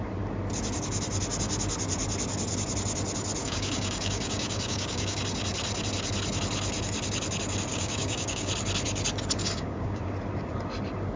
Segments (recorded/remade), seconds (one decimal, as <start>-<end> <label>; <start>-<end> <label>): 0.0-3.4 recorded; 3.4-5.2 remade; 5.2-7.7 recorded; 7.7-8.5 remade; 8.5-9.4 recorded; 9.4-10.0 remade; 10.0-11.2 recorded